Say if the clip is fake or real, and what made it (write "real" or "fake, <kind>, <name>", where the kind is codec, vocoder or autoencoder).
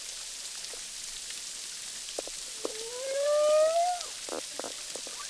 real